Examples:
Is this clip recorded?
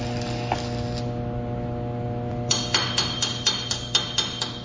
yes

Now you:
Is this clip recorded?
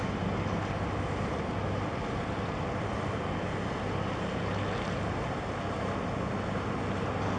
yes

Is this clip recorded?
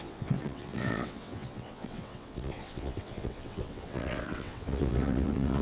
no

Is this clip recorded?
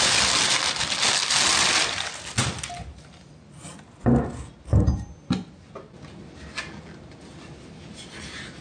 yes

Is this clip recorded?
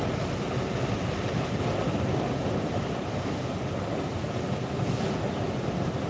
yes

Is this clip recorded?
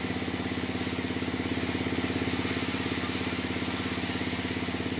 yes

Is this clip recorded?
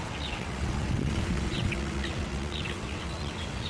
no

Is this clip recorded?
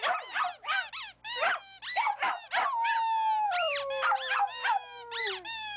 yes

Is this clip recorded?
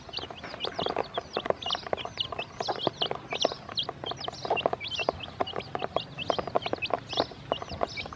yes